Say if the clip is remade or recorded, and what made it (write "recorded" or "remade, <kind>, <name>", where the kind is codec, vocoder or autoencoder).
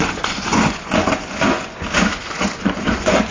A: remade, vocoder, Vocos